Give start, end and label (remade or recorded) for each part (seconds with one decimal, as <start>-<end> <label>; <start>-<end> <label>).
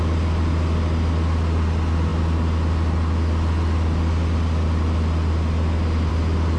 0.0-6.6 recorded